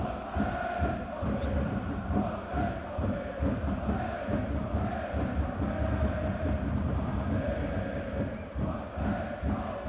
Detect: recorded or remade recorded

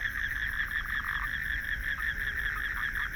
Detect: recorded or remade recorded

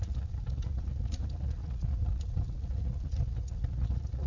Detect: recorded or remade remade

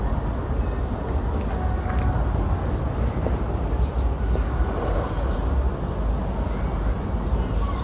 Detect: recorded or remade recorded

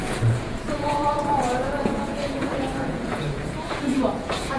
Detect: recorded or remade remade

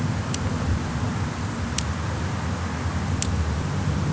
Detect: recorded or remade recorded